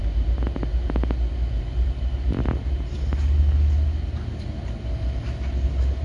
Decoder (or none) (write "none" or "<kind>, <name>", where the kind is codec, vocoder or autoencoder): none